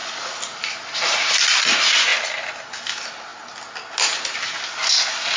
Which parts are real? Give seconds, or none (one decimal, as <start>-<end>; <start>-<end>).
0.0-5.4